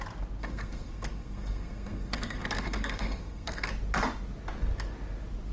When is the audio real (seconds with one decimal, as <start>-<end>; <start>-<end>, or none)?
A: 0.0-0.4; 3.7-5.5